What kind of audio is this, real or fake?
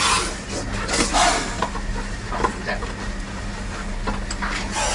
real